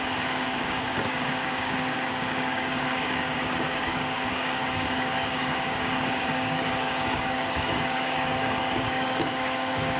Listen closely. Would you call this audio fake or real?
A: fake